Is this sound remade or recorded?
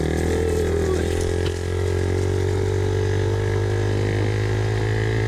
recorded